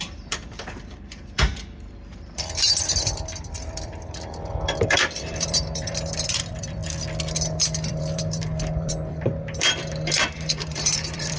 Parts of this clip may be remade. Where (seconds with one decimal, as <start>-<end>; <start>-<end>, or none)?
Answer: 0.0-6.8; 7.9-11.4